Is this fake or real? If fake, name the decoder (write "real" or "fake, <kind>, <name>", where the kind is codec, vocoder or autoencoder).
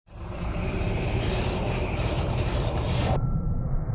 fake, vocoder, BigVGAN v2